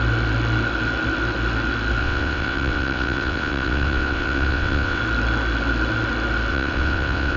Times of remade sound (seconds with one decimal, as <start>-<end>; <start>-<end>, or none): 2.0-5.0; 6.5-7.4